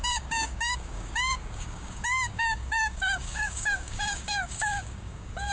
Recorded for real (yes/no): no